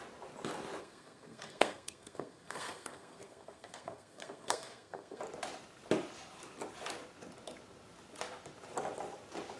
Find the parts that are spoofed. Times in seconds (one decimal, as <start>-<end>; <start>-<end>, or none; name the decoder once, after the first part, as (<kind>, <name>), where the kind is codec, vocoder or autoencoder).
0.8-5.2 (codec, SNAC)